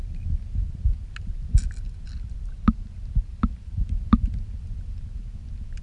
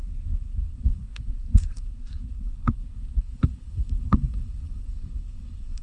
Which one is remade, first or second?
second